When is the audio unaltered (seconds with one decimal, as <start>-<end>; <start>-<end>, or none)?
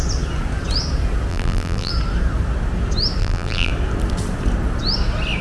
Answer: 0.0-1.3; 1.9-3.2; 3.7-5.4